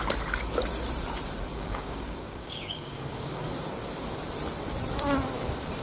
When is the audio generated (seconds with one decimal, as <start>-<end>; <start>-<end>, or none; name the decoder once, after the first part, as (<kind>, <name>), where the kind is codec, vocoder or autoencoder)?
1.5-3.5 (codec, DAC)